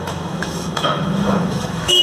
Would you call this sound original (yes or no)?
no